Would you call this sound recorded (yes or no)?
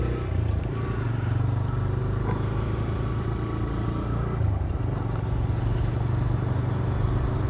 yes